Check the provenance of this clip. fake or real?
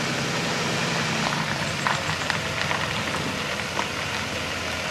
real